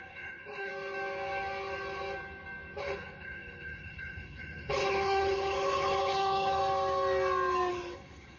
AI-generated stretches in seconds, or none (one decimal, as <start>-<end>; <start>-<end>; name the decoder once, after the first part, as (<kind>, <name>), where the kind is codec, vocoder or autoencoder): 0.0-0.7 (codec, HILCodec); 2.8-6.6; 7.7-8.4